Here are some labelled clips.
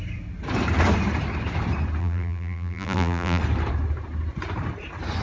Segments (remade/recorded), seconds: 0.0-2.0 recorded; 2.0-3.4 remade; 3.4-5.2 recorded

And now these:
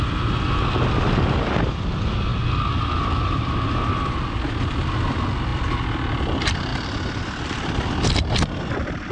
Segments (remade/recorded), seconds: 0.0-9.1 recorded

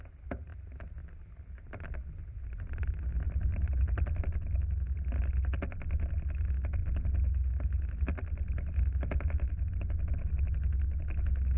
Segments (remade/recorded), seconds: 0.0-1.0 recorded; 1.0-4.2 remade; 4.2-11.6 recorded

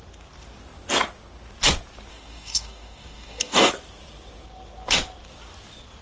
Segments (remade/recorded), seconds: 0.0-2.1 recorded; 2.1-3.7 remade; 3.7-6.0 recorded

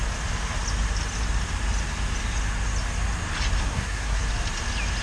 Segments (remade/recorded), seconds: 0.0-3.6 recorded; 3.6-4.2 remade; 4.2-5.0 recorded